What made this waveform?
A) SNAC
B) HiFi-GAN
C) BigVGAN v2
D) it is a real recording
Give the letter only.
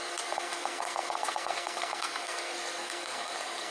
A